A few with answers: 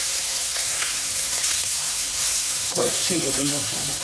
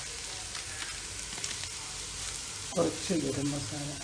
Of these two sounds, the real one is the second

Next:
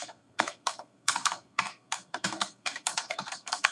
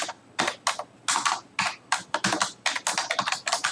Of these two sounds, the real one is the second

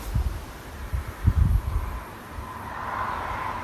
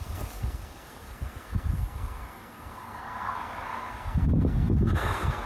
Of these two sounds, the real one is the first